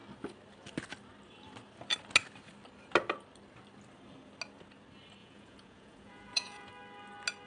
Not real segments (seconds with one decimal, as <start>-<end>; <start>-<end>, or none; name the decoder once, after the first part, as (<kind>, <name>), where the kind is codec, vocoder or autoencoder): 5.2-6.7 (vocoder, Vocos)